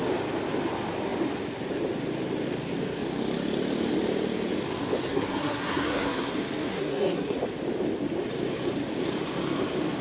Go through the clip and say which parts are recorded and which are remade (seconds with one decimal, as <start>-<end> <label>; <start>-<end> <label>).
0.0-5.1 recorded; 5.1-6.3 remade; 6.3-6.7 recorded; 6.7-7.4 remade; 7.4-10.0 recorded